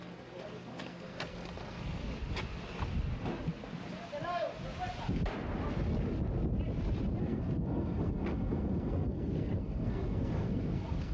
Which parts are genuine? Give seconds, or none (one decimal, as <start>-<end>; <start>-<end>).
2.0-7.2